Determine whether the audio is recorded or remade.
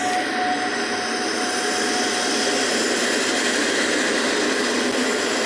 recorded